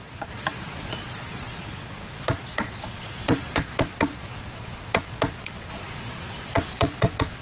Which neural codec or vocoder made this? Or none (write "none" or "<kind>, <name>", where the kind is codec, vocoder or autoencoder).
vocoder, Vocos